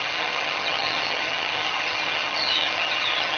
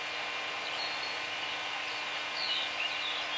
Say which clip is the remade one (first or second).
first